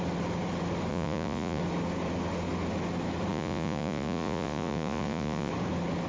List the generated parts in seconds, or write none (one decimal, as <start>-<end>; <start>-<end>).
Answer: 0.9-1.6; 3.3-5.5